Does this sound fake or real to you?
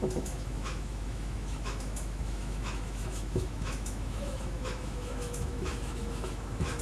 fake